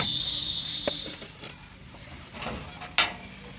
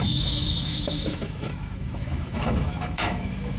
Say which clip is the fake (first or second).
second